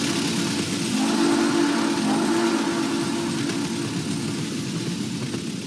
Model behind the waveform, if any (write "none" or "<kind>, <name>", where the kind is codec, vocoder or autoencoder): none